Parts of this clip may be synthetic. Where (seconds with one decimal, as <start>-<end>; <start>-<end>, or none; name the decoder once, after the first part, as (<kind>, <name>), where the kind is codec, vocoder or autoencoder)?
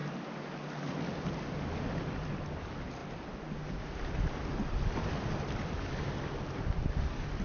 none